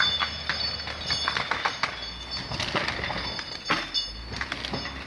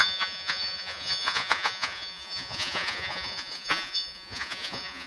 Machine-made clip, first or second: second